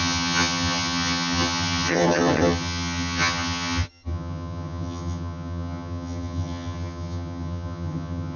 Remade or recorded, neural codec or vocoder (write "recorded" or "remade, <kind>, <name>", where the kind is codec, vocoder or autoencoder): remade, vocoder, HiFi-GAN